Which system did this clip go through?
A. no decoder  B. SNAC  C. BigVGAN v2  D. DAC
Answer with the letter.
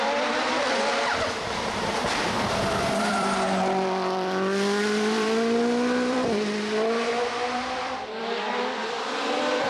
C